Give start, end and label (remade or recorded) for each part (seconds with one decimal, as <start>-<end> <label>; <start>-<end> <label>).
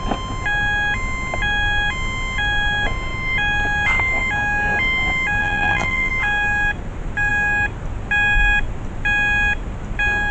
0.0-5.4 recorded; 5.4-6.1 remade; 6.1-10.3 recorded